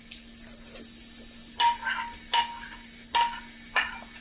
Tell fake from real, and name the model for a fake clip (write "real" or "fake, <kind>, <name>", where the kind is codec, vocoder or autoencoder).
real